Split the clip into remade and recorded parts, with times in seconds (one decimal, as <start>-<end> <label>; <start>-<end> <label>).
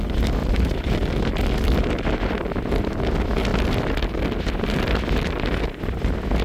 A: 0.0-0.4 recorded; 0.4-0.9 remade; 0.9-6.4 recorded